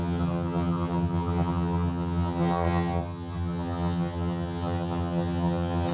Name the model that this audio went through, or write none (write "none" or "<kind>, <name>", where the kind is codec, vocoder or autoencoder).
vocoder, HiFi-GAN